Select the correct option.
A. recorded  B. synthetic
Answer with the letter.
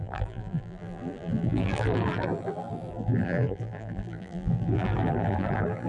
B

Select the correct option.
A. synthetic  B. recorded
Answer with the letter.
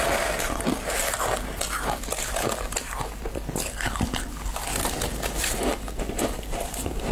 B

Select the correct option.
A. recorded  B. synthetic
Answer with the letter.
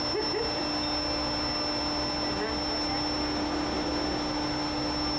A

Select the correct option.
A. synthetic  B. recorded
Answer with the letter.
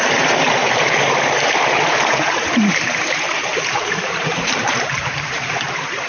A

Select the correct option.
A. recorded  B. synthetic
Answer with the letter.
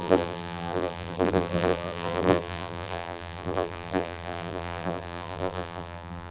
B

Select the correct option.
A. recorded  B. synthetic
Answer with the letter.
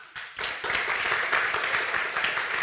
A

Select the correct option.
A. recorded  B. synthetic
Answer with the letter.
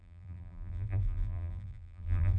B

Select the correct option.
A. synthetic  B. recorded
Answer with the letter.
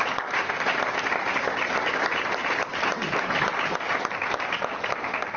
B